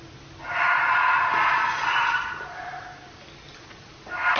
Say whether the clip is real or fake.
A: real